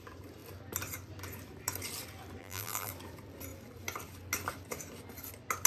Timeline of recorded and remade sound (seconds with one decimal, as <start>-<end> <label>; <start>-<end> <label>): 0.0-2.4 recorded; 2.4-2.9 remade; 2.9-5.7 recorded